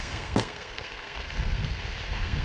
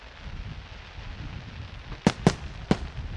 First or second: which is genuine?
second